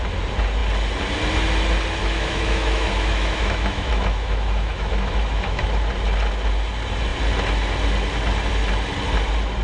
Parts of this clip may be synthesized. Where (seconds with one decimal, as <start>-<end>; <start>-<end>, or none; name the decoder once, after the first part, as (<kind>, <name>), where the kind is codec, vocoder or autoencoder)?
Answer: 2.0-5.6 (autoencoder, DAC-VAE)

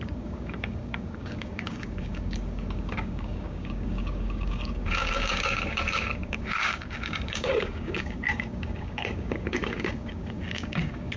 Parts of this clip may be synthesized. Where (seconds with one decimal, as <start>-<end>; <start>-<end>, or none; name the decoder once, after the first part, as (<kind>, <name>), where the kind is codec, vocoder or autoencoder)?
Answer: 0.0-11.2 (codec, DAC)

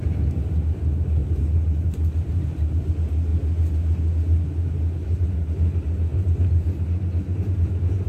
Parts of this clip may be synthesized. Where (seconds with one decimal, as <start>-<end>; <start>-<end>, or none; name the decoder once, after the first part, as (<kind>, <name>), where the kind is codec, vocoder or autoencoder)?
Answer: 1.2-2.9 (vocoder, BigVGAN v2); 6.1-7.6